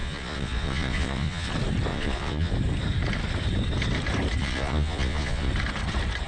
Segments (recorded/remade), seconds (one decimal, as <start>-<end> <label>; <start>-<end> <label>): 0.0-1.5 remade; 1.5-1.9 recorded; 1.9-2.5 remade; 2.5-4.4 recorded; 4.4-5.5 remade; 5.5-6.3 recorded